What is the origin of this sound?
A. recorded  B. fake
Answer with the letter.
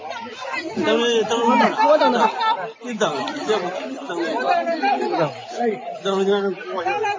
A